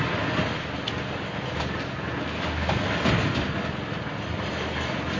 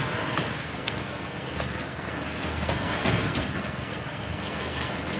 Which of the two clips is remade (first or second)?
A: second